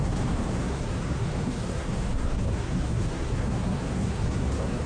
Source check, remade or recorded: remade